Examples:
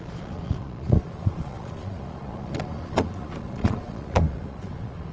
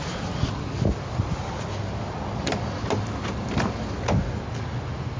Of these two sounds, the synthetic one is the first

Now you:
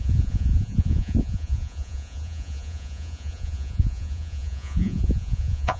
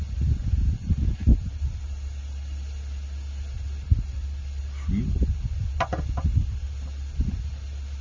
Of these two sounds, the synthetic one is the first